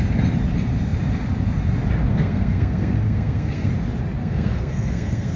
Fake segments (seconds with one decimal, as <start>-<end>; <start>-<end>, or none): 2.1-3.7; 4.2-5.4